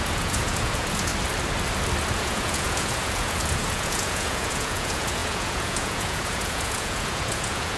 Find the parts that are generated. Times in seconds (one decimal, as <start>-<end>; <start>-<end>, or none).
0.0-1.1; 2.1-7.8